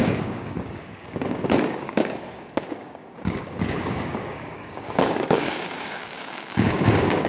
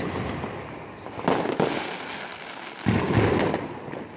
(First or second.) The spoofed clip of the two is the first